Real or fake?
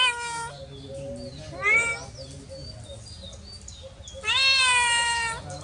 real